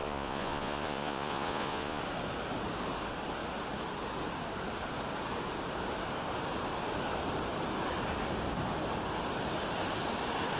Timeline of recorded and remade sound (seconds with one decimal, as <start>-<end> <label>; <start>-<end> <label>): 0.0-2.0 remade; 2.0-10.6 recorded